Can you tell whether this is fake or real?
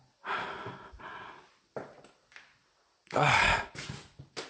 real